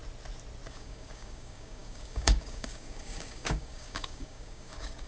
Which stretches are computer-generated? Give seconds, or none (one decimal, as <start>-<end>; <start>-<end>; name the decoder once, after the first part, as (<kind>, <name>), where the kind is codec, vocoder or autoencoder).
0.7-5.1 (codec, DAC)